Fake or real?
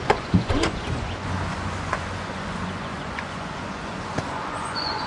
fake